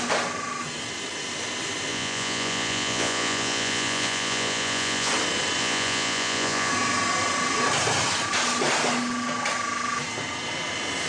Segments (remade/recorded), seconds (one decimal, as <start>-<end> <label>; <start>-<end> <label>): 0.0-1.9 recorded; 1.9-5.1 remade; 5.1-5.6 recorded; 5.6-6.7 remade; 6.7-11.1 recorded